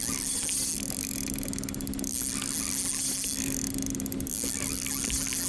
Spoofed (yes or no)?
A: no